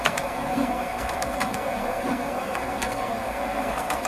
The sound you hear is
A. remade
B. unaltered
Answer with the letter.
A